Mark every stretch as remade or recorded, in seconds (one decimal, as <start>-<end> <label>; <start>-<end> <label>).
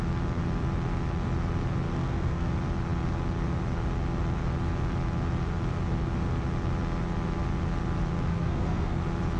0.0-1.9 recorded; 1.9-2.5 remade; 2.5-8.3 recorded; 8.3-9.0 remade; 9.0-9.4 recorded